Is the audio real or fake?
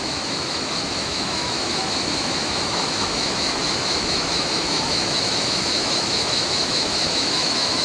fake